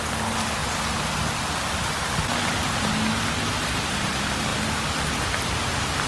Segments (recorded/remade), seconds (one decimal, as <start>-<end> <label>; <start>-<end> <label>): 0.0-6.1 recorded